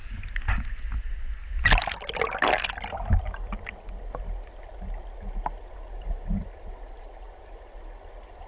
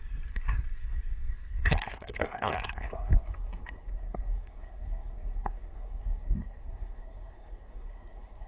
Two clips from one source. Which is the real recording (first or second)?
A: first